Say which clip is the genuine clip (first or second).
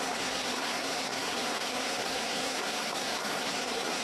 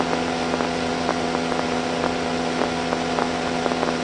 second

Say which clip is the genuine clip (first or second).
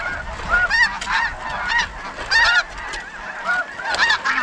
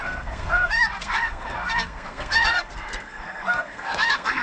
first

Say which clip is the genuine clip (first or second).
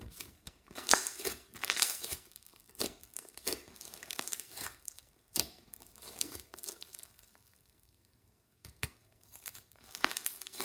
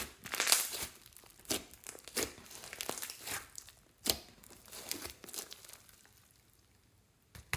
second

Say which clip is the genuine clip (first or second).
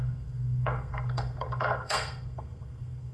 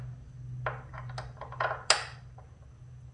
second